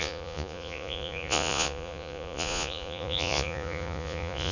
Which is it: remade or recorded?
remade